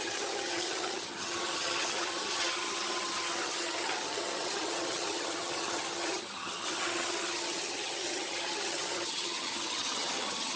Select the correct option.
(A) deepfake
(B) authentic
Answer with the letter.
A